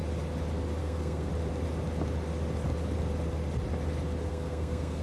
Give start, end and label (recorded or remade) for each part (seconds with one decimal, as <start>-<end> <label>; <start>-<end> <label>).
0.0-0.8 recorded; 0.8-1.3 remade; 1.3-4.3 recorded; 4.3-5.0 remade